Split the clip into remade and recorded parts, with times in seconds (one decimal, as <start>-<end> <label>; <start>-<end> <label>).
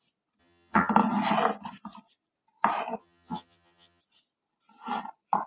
0.0-0.4 recorded; 0.4-0.9 remade; 0.9-3.0 recorded; 3.0-4.0 remade; 4.0-5.5 recorded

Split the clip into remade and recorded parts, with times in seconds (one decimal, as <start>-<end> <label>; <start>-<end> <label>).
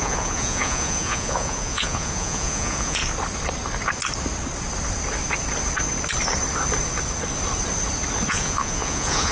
0.0-3.0 remade; 3.0-8.3 recorded; 8.3-9.3 remade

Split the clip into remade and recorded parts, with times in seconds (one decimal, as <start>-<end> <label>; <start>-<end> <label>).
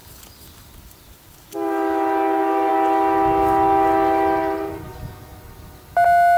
0.0-6.4 recorded